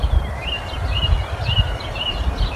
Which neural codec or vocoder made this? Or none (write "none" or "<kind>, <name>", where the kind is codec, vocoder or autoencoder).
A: vocoder, BigVGAN v2